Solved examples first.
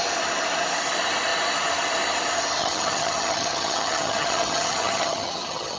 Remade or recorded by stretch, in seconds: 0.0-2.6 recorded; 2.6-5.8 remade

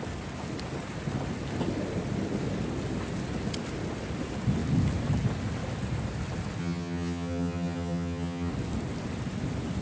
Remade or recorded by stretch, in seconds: 0.0-6.6 recorded; 6.6-8.5 remade; 8.5-9.8 recorded

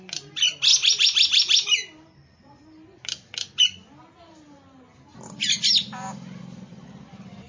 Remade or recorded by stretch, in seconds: 0.0-7.5 recorded

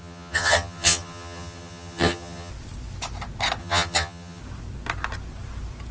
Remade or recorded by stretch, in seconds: 0.0-2.5 remade; 2.5-3.6 recorded; 3.6-4.4 remade; 4.4-5.9 recorded